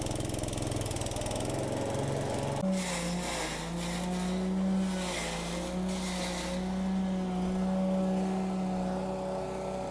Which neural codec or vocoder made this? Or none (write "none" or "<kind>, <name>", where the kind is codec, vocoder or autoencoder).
none